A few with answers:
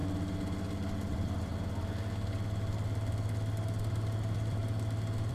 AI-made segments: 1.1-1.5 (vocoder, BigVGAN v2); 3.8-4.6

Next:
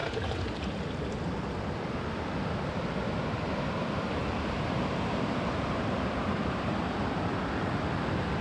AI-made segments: 0.0-1.2 (vocoder, BigVGAN v2); 4.2-7.0